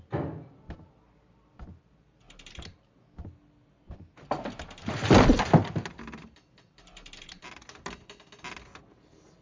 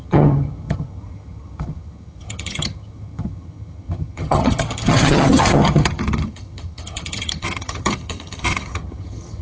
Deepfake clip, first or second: second